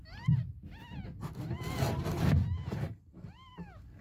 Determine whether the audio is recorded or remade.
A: recorded